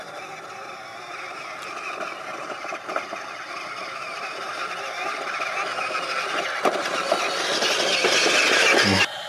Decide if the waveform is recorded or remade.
recorded